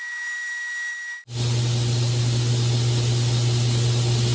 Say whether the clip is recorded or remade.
recorded